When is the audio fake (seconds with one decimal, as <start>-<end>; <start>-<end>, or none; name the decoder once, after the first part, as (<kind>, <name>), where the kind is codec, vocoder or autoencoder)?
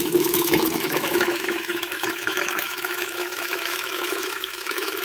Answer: 0.0-5.0 (autoencoder, DAC-VAE)